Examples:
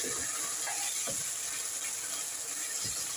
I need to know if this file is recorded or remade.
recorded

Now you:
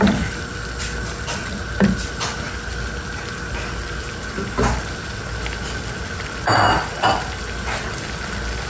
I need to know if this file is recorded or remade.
recorded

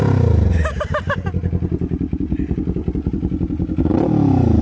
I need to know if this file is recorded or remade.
recorded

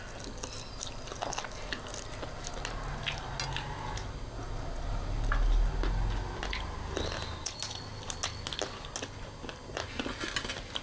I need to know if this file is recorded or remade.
recorded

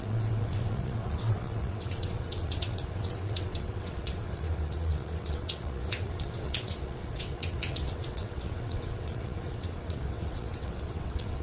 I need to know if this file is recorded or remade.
remade